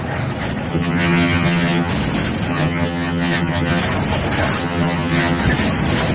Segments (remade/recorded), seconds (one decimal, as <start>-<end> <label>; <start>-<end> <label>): 0.0-0.7 recorded; 0.7-1.9 remade; 1.9-2.5 recorded; 2.5-3.8 remade; 3.8-4.6 recorded; 4.6-5.4 remade; 5.4-6.1 recorded